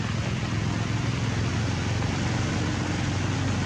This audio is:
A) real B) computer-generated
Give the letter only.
A